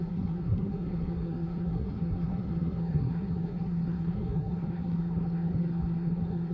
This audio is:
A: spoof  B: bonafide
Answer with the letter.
A